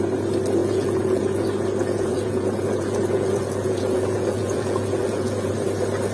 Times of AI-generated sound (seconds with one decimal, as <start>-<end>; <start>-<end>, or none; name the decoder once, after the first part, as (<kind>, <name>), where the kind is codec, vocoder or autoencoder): 0.6-1.2 (vocoder, Vocos); 1.8-5.5